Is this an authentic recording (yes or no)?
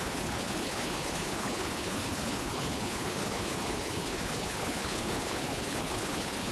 no